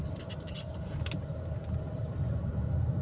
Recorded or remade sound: recorded